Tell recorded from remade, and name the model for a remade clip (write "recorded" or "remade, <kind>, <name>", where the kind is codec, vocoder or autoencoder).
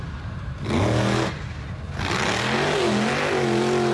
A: recorded